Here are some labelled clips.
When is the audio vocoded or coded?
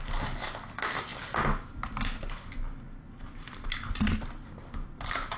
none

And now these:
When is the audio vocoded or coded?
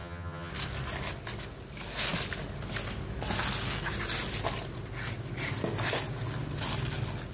0.0-0.5 (vocoder, HiFi-GAN)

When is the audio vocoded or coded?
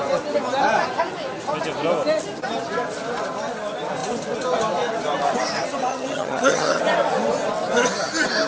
5.9-6.8 (vocoder, HiFi-GAN)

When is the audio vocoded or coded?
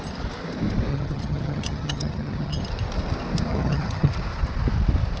0.9-2.6 (vocoder, HiFi-GAN); 3.5-4.1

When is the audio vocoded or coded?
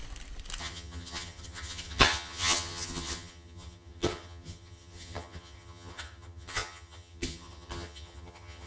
0.6-8.7 (vocoder, HiFi-GAN)